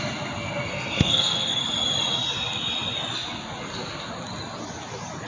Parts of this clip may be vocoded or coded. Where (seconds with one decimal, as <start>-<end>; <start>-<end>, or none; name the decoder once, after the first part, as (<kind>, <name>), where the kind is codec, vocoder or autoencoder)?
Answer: 0.7-1.6 (codec, SNAC)